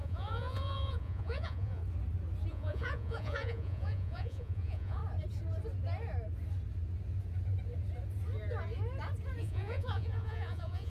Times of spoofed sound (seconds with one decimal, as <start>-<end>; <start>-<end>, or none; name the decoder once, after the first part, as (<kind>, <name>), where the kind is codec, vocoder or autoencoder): 0.0-1.8 (vocoder, Vocos); 2.5-5.0; 9.4-10.9